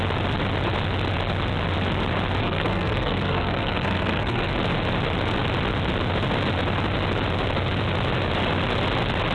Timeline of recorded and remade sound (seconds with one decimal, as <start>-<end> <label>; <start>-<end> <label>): 0.0-2.4 recorded; 2.4-4.5 remade; 4.5-9.3 recorded